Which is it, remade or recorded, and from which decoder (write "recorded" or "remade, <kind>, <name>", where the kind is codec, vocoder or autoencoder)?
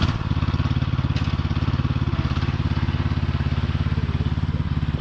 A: recorded